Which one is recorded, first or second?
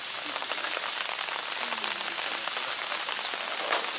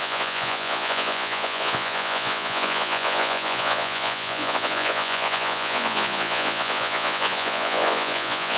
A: first